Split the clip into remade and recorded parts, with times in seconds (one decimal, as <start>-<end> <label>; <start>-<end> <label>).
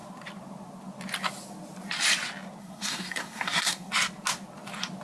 0.0-2.6 recorded; 2.6-3.9 remade; 3.9-5.0 recorded